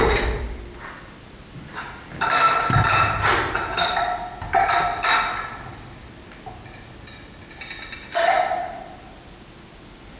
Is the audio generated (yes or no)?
no